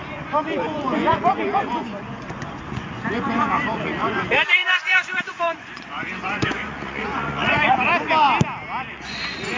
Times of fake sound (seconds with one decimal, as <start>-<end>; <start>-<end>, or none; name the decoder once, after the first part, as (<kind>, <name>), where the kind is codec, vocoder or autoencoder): 0.0-7.9 (vocoder, Vocos); 8.9-9.6

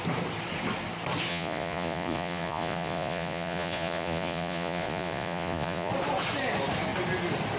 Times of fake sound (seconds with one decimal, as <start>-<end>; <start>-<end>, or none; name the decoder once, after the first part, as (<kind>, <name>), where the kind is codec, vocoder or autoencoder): 1.3-5.9 (vocoder, Vocos)

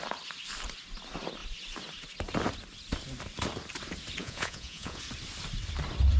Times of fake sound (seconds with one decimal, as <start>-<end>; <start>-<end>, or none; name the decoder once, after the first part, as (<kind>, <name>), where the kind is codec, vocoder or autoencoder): 4.2-5.0 (vocoder, Vocos)

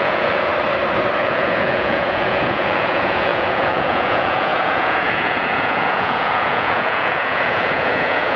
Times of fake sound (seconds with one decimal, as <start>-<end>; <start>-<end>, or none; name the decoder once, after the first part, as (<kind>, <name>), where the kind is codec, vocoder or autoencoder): 0.0-0.5 (vocoder, Vocos); 1.2-8.4

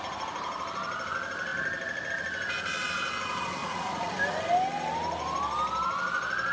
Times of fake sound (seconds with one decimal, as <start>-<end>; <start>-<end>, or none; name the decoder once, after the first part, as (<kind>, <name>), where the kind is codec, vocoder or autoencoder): 3.6-4.1 (vocoder, Vocos)

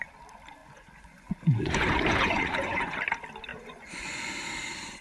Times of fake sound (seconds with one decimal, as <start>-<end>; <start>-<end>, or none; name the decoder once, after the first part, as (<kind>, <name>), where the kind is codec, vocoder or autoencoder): 0.6-3.0 (vocoder, Vocos); 3.5-4.3

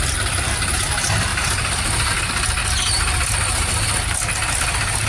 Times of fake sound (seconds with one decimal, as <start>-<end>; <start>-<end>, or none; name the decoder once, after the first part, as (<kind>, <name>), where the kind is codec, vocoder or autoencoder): none